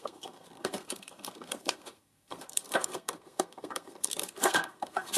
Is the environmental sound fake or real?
fake